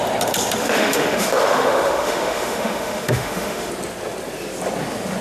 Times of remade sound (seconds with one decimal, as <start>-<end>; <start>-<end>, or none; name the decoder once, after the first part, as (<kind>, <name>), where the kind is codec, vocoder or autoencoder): 0.6-3.7 (autoencoder, DAC-VAE)